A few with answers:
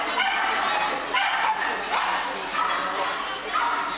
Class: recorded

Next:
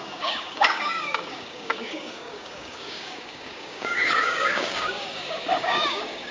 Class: remade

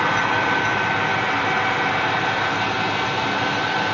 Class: recorded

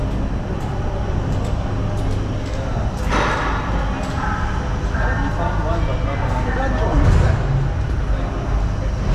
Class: recorded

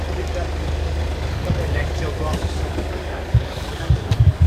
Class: remade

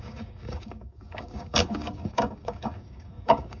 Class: remade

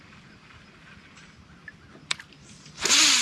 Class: recorded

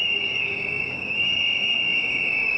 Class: remade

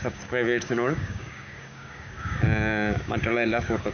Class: remade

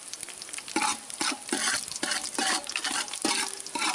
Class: recorded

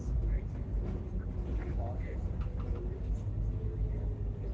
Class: recorded